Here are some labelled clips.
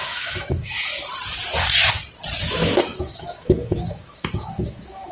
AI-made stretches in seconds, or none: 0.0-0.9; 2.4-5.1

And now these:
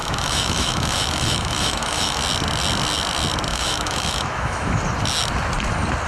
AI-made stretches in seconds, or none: 0.0-2.2; 3.5-4.8

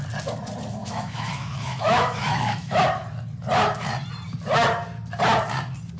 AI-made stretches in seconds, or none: 0.8-2.8

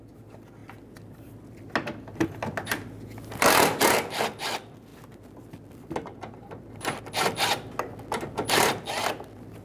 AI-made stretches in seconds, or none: none